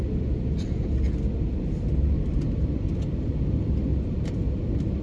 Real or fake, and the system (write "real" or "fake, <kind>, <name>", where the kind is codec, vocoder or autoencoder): real